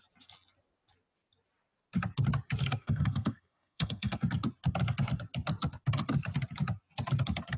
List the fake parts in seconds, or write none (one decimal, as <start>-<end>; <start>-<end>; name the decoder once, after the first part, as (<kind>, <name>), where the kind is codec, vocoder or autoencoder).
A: 2.7-4.2 (codec, SNAC)